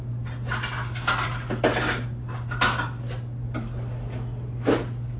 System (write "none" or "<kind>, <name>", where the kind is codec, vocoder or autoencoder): none